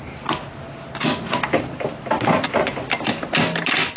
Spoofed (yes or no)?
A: no